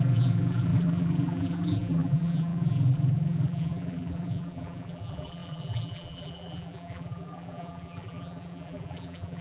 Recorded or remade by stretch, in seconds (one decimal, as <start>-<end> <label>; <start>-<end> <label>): 0.0-9.4 remade